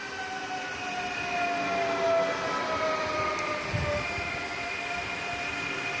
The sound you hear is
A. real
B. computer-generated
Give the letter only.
A